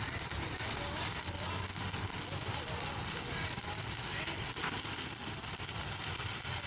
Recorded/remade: recorded